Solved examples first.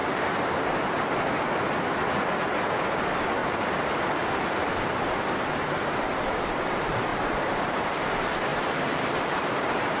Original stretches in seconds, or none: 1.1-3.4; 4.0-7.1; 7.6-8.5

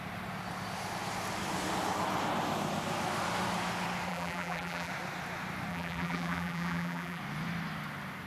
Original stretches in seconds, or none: 0.0-4.1; 4.9-5.7; 7.2-8.3

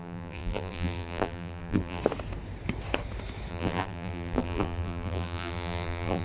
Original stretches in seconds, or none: 2.0-3.5

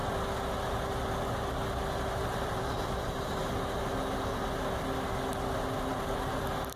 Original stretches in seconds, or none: 0.0-2.2; 3.5-6.8

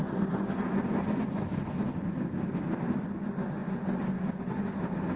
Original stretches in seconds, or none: 0.0-5.2